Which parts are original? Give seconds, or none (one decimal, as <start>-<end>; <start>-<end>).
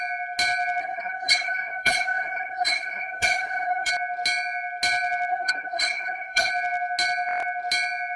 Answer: 0.0-0.8; 3.9-5.3; 6.5-8.2